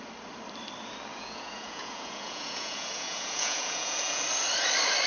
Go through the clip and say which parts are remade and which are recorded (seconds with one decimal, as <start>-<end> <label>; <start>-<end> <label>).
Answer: 0.0-1.1 recorded; 1.1-4.2 remade; 4.2-5.1 recorded